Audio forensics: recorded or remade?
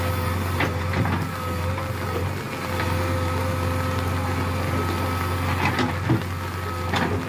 recorded